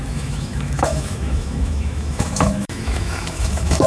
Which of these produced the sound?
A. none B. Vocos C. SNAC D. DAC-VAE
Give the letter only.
D